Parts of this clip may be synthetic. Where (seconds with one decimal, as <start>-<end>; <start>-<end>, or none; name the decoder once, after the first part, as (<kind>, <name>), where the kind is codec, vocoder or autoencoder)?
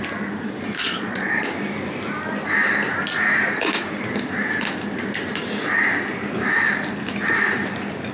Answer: 0.8-1.5 (vocoder, Vocos)